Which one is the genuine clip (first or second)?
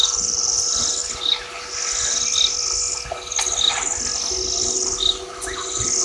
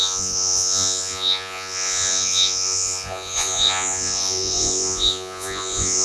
first